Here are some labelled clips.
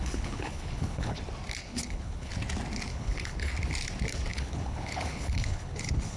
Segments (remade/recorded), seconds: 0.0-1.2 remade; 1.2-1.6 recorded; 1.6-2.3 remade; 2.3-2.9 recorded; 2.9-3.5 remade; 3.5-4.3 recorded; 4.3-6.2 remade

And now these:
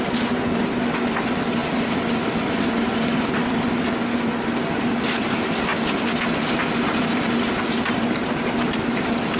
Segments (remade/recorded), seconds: 0.0-9.4 recorded

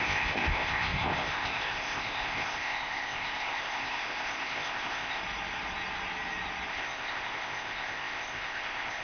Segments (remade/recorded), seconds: 0.0-5.2 remade; 5.2-6.7 recorded; 6.7-9.0 remade